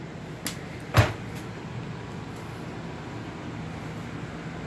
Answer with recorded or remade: recorded